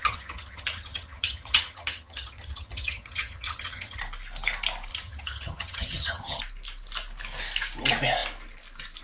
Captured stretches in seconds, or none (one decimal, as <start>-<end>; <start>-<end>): 4.0-4.9; 6.4-9.0